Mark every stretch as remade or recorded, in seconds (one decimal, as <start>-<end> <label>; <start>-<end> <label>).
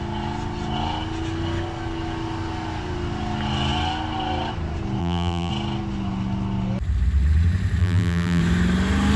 0.0-5.0 recorded; 5.0-5.5 remade; 5.5-7.8 recorded; 7.8-8.4 remade; 8.4-9.2 recorded